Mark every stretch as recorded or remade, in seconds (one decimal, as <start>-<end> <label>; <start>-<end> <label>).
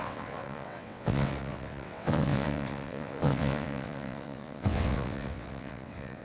0.0-6.2 remade